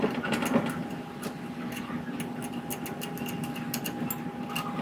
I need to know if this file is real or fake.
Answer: real